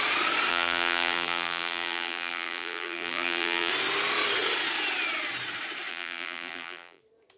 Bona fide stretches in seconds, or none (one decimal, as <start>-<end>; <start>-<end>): 0.0-0.5; 3.7-5.9; 7.0-7.4